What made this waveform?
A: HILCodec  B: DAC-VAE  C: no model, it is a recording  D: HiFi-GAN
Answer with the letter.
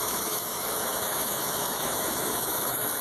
B